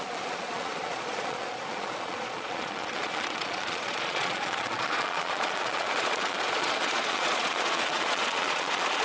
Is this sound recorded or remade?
remade